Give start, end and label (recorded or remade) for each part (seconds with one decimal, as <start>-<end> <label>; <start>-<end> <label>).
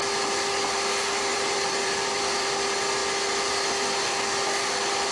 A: 0.0-1.3 recorded; 1.3-2.5 remade; 2.5-5.1 recorded